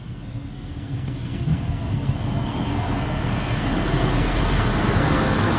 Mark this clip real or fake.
fake